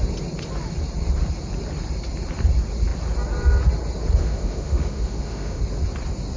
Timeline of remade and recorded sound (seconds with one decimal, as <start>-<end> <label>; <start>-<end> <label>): 0.0-4.2 recorded; 4.2-5.6 remade; 5.6-6.4 recorded